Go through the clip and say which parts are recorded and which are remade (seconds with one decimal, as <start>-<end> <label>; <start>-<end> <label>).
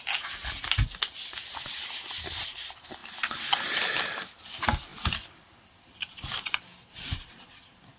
0.0-4.9 recorded; 4.9-7.4 remade; 7.4-8.0 recorded